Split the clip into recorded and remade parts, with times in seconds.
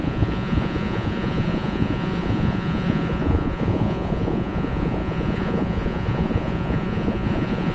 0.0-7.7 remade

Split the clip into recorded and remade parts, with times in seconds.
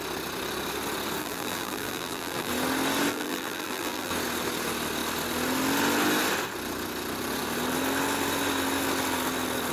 0.0-1.2 recorded; 1.2-2.5 remade; 2.5-3.1 recorded; 3.1-4.1 remade; 4.1-9.7 recorded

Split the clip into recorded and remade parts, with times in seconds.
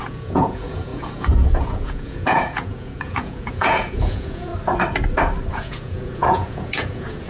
0.0-4.5 remade; 4.5-5.5 recorded; 5.5-7.3 remade